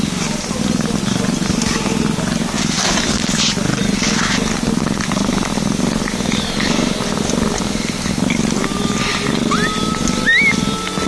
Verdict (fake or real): real